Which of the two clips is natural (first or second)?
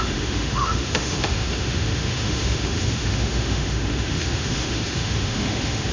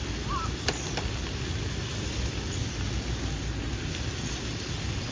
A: second